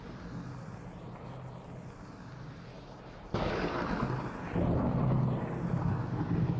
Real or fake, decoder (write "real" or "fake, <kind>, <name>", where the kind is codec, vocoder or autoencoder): real